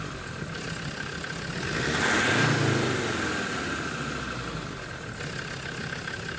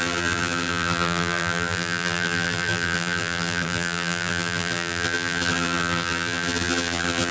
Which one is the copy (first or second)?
second